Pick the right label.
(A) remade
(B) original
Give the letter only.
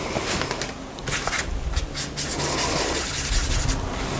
B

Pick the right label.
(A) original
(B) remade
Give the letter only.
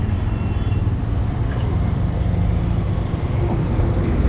B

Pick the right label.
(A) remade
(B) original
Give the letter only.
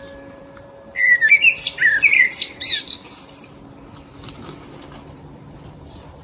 A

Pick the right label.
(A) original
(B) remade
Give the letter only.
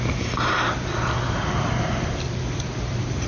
B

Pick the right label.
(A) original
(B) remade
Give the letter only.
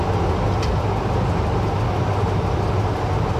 A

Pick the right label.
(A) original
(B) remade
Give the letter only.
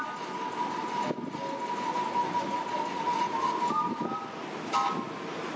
A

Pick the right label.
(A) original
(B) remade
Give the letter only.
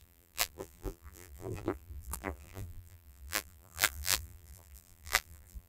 B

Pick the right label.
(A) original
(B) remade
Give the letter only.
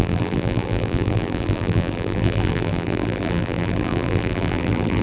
B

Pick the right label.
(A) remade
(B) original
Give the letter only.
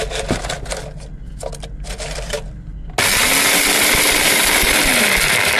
B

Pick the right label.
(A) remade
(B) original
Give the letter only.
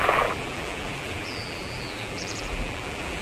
A